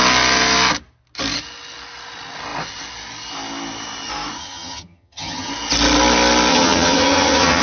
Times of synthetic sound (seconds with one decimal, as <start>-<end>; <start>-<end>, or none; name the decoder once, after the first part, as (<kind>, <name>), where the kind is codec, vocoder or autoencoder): 4.4-5.5 (vocoder, HiFi-GAN); 6.5-7.6